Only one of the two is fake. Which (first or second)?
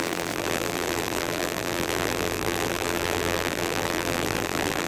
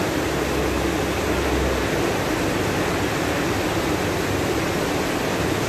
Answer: first